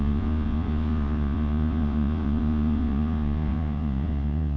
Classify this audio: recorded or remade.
remade